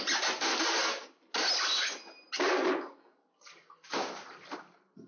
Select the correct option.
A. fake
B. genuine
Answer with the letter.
B